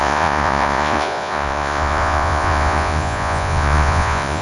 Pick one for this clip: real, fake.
fake